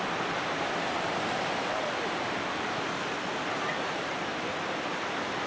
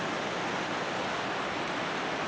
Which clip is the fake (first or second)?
first